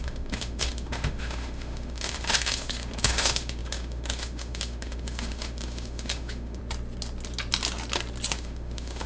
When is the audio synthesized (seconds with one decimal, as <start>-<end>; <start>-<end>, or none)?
0.0-6.6; 8.3-9.1